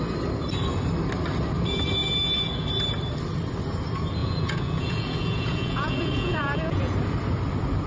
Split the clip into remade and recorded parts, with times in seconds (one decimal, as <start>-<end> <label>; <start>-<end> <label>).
0.0-4.2 recorded; 4.2-6.9 remade; 6.9-7.9 recorded